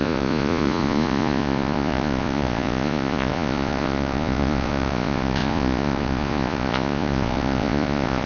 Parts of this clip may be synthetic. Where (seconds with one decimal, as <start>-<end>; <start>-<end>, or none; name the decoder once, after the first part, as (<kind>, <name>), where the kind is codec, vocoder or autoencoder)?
0.0-8.3 (vocoder, Vocos)